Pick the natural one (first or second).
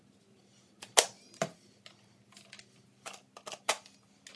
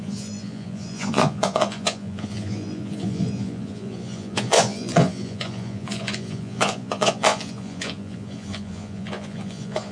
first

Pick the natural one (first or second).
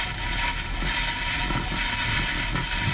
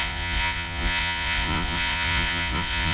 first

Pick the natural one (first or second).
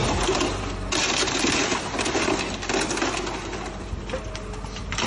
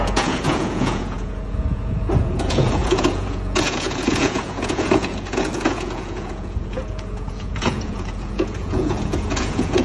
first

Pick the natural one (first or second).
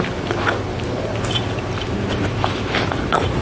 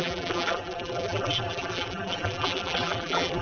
first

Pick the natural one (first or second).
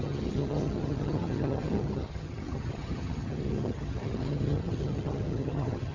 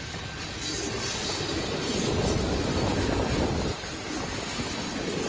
second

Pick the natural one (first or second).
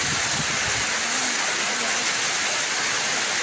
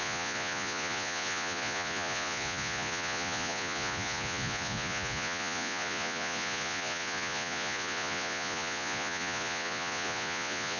first